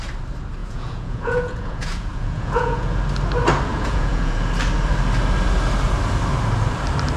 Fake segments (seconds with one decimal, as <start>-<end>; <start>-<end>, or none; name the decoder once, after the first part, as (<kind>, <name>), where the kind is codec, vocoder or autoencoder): 0.6-3.0 (vocoder, Vocos); 3.7-4.4